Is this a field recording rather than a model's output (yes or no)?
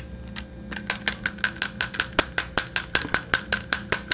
yes